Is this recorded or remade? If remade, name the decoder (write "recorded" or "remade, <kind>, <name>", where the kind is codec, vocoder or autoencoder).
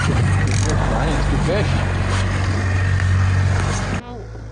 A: recorded